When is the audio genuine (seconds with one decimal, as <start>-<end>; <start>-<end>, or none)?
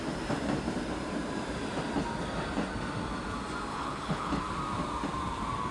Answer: 0.0-3.7; 4.4-5.7